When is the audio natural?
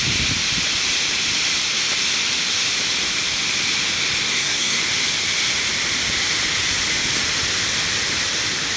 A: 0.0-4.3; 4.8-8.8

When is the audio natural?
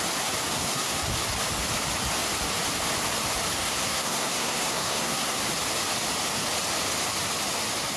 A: 0.0-0.5; 1.1-3.6; 5.4-8.0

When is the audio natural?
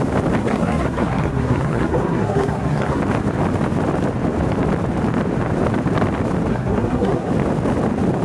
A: 0.0-0.4; 3.0-6.5; 7.3-8.2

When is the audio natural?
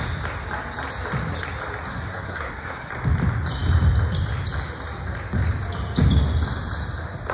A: 0.0-1.9; 2.9-7.3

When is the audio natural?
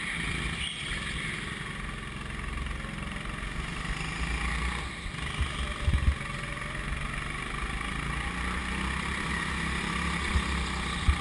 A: 0.0-11.2